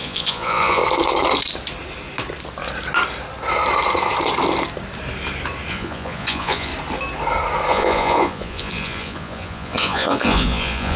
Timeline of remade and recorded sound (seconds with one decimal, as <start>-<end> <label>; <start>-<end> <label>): 0.0-0.8 remade; 0.8-5.7 recorded; 5.7-6.7 remade; 6.7-7.7 recorded; 7.7-11.0 remade